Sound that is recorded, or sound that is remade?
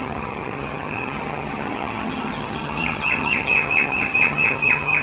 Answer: remade